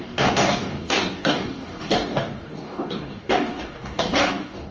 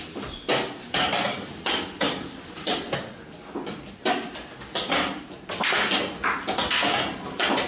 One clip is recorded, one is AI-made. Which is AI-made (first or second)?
first